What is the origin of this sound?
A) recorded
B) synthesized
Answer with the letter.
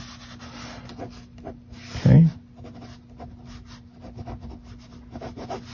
A